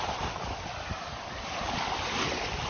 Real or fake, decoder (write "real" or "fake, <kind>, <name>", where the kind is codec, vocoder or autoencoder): real